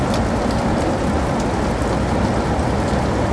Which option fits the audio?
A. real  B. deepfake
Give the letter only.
A